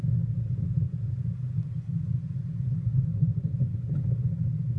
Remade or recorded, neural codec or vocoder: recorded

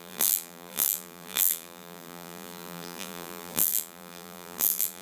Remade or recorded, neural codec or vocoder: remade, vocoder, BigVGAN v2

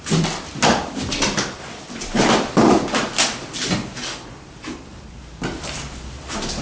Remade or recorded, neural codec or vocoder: remade, vocoder, BigVGAN v2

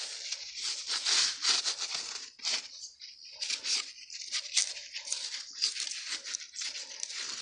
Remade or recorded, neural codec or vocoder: remade, vocoder, BigVGAN v2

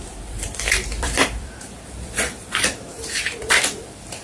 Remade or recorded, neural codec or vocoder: remade, vocoder, BigVGAN v2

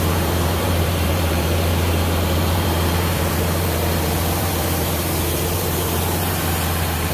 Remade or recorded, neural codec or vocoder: remade, vocoder, BigVGAN v2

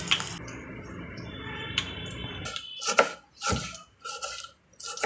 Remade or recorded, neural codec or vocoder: recorded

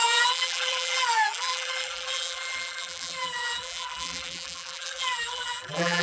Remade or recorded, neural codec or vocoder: remade, vocoder, BigVGAN v2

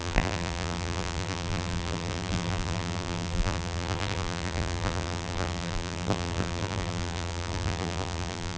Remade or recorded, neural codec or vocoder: remade, vocoder, BigVGAN v2